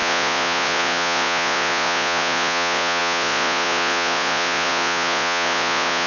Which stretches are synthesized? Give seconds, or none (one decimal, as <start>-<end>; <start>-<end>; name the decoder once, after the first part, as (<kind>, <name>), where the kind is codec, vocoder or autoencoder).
0.0-6.1 (vocoder, Vocos)